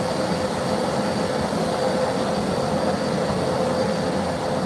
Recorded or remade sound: recorded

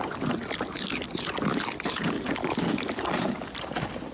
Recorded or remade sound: recorded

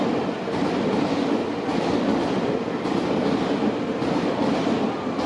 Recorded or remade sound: recorded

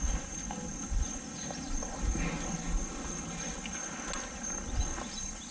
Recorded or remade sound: recorded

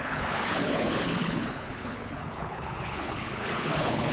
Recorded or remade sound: remade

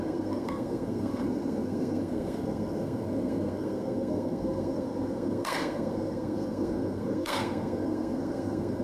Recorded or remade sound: remade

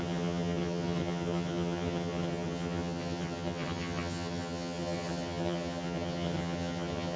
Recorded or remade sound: remade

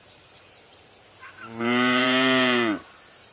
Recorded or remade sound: remade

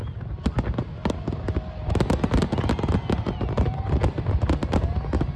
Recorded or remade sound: recorded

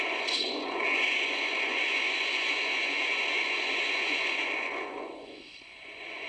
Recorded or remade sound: remade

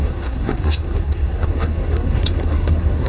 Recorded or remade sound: remade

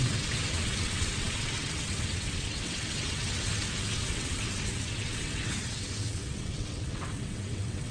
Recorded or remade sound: remade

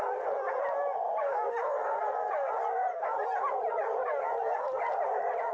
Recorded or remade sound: recorded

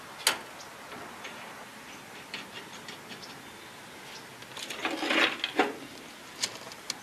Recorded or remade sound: recorded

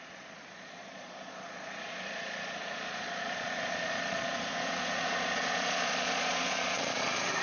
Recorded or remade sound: remade